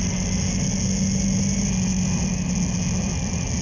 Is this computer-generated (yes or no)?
no